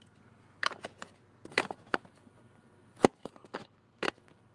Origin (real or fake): real